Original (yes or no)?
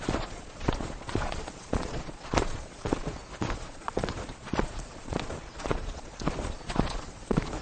no